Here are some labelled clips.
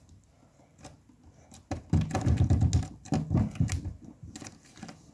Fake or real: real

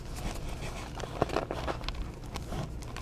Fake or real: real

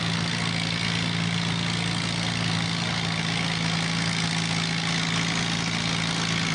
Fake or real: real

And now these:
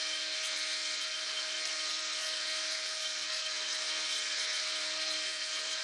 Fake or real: fake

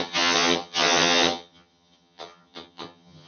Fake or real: fake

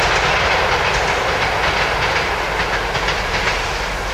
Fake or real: real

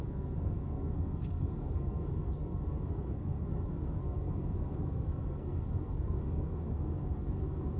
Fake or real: fake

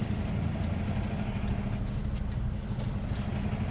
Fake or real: real